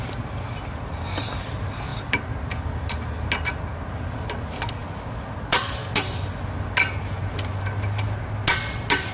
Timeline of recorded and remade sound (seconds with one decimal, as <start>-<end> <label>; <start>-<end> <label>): 0.0-9.1 recorded